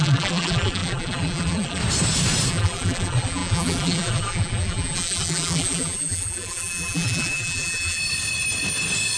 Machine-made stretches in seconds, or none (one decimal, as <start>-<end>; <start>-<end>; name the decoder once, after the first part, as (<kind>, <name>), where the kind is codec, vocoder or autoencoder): 0.0-1.8 (vocoder, BigVGAN v2); 2.5-8.0